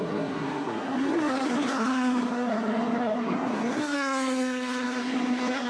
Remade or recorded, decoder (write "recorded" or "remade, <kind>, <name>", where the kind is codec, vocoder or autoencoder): remade, codec, SNAC